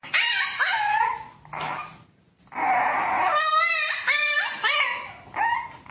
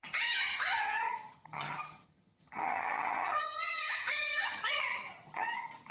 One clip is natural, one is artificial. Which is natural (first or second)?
first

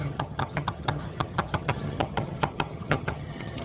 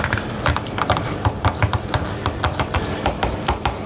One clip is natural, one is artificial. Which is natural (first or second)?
second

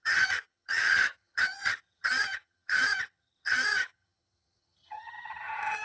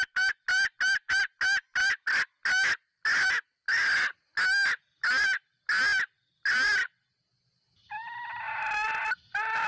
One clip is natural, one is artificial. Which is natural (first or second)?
second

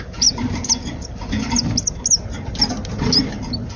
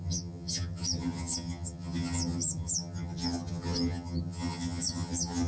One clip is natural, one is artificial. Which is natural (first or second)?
first